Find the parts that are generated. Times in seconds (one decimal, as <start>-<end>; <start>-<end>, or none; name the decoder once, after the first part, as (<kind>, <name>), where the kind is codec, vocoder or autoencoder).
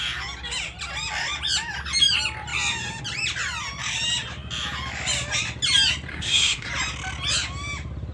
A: 6.1-6.7 (codec, SNAC)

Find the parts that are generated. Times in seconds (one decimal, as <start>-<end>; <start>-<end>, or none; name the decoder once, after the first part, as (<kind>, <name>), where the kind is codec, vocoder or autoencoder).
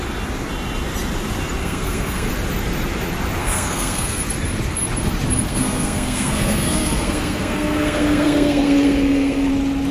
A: 1.6-2.3 (codec, SNAC); 3.4-4.2; 5.5-9.5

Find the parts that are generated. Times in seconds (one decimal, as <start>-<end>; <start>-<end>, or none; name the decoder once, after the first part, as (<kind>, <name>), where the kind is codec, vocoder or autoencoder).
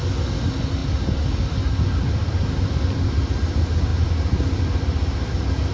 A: none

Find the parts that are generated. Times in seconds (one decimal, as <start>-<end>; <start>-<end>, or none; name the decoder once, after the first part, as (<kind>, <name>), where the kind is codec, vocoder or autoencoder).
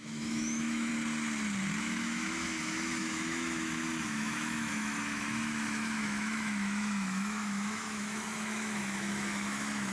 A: 0.0-0.9 (autoencoder, DAC-VAE); 1.8-9.9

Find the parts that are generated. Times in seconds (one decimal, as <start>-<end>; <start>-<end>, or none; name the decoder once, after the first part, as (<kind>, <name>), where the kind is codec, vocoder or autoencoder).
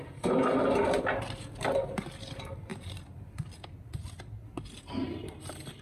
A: none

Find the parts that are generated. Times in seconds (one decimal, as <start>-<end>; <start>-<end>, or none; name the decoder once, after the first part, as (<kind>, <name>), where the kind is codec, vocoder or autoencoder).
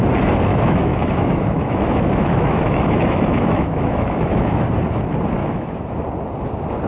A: 0.5-4.6 (autoencoder, DAC-VAE); 5.4-5.9